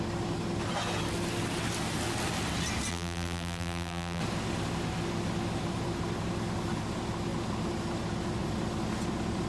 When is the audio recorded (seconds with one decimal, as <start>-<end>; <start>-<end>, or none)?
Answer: 0.0-2.9; 4.2-9.5